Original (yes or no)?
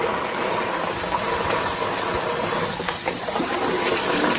yes